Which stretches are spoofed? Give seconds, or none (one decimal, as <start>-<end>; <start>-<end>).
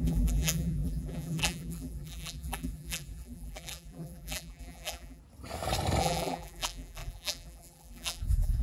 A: 0.0-5.2; 6.0-8.6